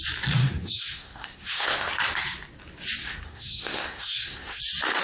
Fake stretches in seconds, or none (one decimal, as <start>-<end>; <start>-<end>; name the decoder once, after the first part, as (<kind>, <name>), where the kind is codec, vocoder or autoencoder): 0.4-1.9 (codec, SNAC); 3.0-4.6